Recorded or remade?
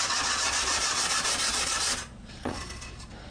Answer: remade